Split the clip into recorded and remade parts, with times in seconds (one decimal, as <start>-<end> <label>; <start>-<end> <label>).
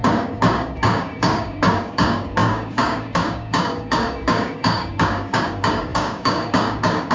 0.0-7.1 remade